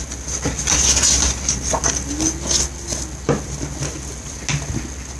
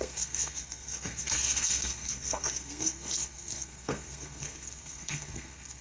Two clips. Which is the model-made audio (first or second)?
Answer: second